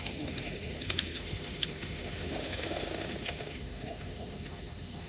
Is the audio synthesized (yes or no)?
yes